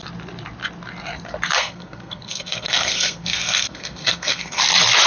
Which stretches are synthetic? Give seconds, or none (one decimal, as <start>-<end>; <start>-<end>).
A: 1.5-4.6